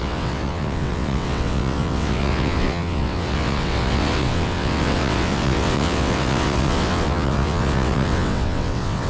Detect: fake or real fake